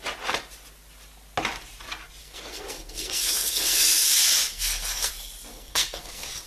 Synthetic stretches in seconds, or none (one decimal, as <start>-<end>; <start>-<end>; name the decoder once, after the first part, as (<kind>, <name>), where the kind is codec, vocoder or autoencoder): 2.2-4.1 (codec, SNAC); 4.5-5.1; 5.5-6.5